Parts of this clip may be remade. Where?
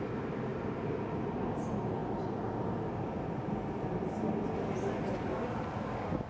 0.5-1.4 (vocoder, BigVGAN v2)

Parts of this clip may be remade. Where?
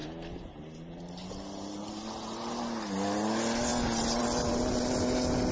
none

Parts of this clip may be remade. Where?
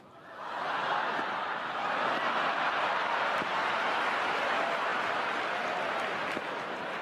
0.0-4.9 (vocoder, BigVGAN v2); 6.6-7.0